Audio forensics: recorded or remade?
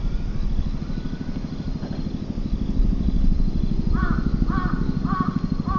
recorded